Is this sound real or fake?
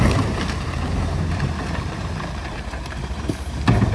fake